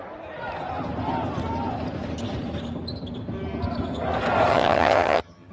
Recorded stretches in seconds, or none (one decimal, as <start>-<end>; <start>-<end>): 0.0-4.5